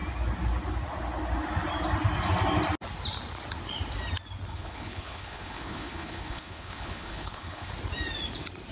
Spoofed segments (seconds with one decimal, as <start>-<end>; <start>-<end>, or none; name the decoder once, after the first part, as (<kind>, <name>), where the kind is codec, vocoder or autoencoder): 4.5-7.7 (codec, HILCodec)